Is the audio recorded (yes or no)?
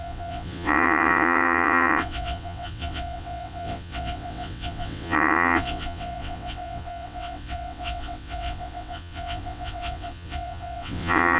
no